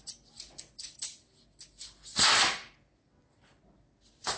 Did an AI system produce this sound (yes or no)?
no